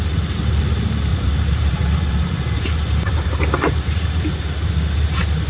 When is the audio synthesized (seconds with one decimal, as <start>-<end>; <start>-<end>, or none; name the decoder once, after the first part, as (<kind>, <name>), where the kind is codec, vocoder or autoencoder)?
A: 1.1-4.2 (vocoder, BigVGAN v2)